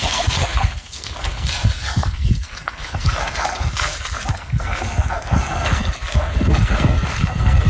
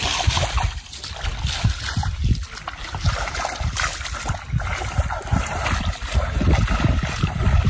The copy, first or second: first